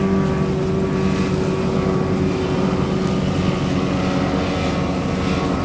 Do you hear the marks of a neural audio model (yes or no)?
no